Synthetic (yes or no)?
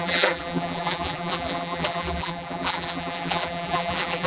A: yes